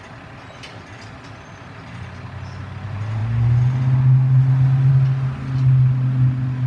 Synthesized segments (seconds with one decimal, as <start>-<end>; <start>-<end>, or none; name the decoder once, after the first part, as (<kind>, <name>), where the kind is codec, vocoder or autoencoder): none